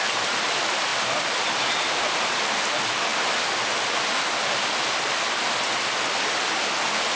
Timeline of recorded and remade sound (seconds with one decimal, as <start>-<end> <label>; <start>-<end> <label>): 0.0-7.2 recorded